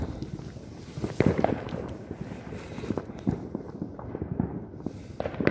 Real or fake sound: real